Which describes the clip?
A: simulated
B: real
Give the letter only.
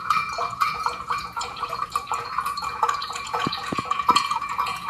A